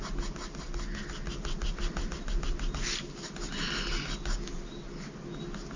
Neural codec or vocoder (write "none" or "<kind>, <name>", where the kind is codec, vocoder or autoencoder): none